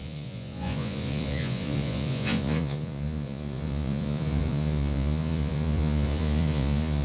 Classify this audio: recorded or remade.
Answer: remade